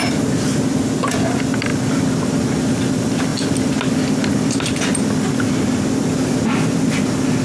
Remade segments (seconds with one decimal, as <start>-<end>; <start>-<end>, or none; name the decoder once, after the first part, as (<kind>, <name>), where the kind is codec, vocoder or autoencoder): none